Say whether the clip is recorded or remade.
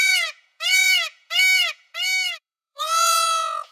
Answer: remade